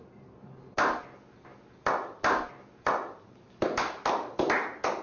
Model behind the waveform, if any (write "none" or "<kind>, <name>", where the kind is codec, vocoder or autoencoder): none